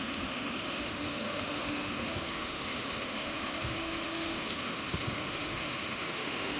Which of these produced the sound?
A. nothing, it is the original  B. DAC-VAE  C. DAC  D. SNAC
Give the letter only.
B